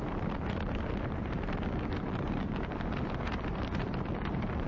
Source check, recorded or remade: remade